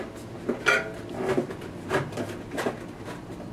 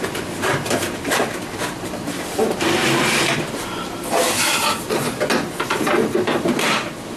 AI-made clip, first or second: second